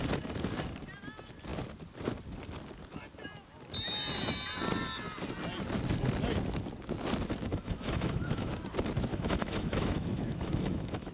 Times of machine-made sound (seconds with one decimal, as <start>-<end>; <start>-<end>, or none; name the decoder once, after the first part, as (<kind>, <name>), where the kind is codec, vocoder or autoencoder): 7.5-8.5 (autoencoder, DAC-VAE); 9.1-11.1